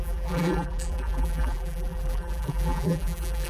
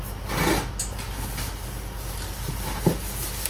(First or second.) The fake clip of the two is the first